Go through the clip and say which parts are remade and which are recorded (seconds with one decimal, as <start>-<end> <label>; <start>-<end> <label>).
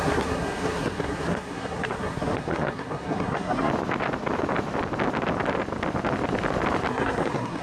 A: 0.0-3.7 remade; 3.7-6.9 recorded; 6.9-7.6 remade